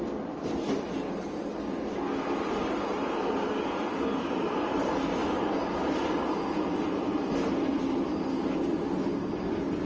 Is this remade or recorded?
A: recorded